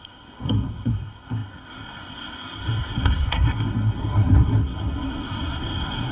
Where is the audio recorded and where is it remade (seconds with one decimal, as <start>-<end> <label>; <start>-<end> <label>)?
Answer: 0.0-6.1 remade